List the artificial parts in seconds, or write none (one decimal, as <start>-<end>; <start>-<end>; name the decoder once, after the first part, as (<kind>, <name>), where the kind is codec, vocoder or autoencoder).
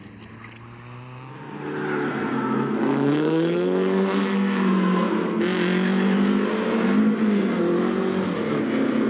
2.1-5.4 (codec, SNAC)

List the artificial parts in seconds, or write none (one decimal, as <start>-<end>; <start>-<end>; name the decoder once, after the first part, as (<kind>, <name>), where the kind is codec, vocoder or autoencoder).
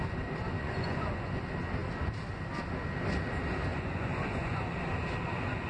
0.6-1.4 (vocoder, Vocos); 3.7-4.6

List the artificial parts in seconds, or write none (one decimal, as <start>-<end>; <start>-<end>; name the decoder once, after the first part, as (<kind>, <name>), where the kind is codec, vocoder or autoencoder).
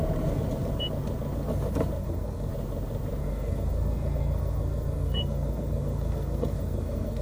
2.0-2.5 (codec, SNAC); 3.2-7.2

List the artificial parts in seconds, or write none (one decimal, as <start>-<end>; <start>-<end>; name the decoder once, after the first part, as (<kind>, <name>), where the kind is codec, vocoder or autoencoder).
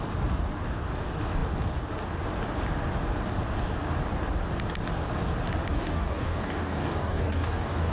5.7-7.9 (codec, DAC)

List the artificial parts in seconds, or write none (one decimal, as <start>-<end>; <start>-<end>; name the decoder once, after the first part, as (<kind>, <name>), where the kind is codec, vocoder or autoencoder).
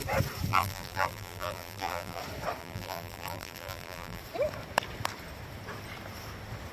0.5-2.2 (vocoder, BigVGAN v2); 2.6-4.2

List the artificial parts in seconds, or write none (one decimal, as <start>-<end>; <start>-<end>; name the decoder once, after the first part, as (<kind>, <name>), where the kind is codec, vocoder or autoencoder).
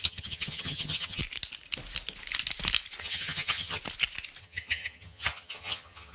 0.0-1.2 (vocoder, HiFi-GAN); 3.0-3.8; 4.4-6.1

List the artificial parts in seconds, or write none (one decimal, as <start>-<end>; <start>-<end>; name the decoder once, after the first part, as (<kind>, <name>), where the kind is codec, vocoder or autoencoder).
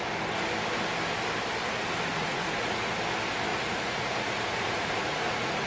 2.1-2.9 (vocoder, Vocos); 3.5-5.7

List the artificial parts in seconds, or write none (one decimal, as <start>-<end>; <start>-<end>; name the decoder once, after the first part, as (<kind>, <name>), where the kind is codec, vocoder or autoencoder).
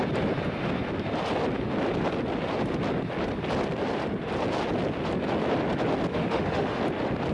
6.1-6.8 (autoencoder, DAC-VAE)